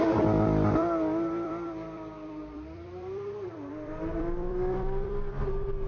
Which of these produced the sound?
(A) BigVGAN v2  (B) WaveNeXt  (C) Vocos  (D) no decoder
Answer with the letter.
A